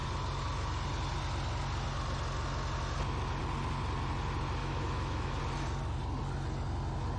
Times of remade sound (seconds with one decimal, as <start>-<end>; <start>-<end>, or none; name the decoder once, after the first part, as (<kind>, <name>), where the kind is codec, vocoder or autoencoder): 4.6-5.4 (autoencoder, DAC-VAE)